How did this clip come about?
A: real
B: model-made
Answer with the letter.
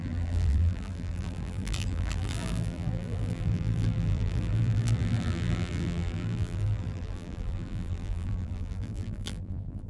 B